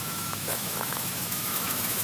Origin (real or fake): fake